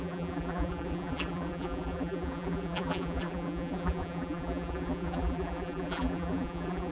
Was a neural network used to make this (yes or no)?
yes